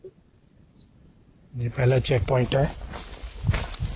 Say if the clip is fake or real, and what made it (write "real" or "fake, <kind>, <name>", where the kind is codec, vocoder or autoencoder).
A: real